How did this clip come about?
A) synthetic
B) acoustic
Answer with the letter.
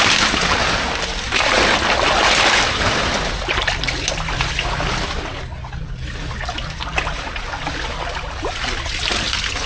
B